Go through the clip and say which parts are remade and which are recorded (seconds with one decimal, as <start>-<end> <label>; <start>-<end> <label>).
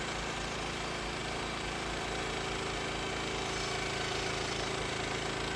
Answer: 0.0-5.6 recorded